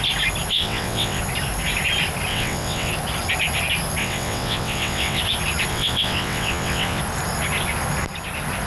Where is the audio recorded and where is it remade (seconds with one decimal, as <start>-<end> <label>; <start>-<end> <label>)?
0.0-0.5 recorded; 0.5-1.2 remade; 1.2-2.3 recorded; 2.3-2.9 remade; 2.9-4.0 recorded; 4.0-5.2 remade; 5.2-5.7 recorded; 5.7-7.0 remade; 7.0-8.7 recorded